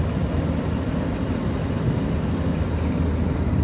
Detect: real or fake real